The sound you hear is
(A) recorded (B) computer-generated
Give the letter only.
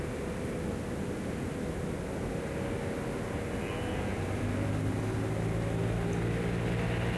A